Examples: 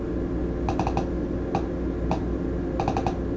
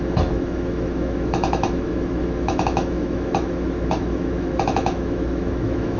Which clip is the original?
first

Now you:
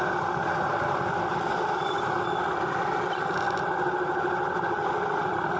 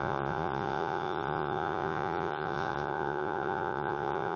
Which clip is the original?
first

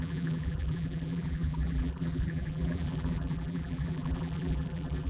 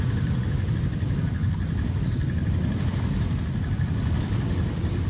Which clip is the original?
second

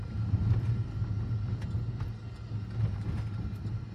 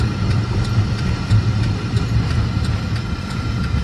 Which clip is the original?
first